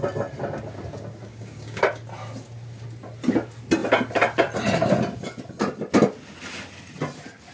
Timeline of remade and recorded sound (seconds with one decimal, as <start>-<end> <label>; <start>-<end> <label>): 0.0-1.3 recorded; 1.3-1.8 remade; 1.8-7.5 recorded